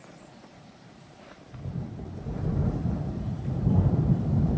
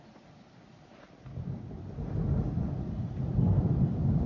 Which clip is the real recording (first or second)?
second